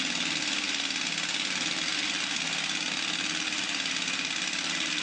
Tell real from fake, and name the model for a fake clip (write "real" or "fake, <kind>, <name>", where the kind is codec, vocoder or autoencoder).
real